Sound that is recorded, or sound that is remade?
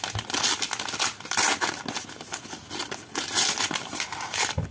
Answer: recorded